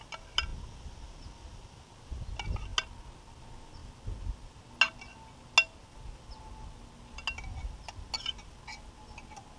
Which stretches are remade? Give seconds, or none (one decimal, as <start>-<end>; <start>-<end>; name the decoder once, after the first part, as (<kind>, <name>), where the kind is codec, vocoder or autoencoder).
none